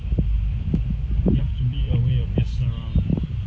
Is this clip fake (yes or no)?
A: yes